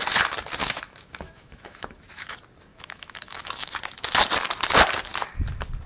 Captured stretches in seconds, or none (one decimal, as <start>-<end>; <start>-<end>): 0.0-0.6; 2.3-2.7; 3.7-5.9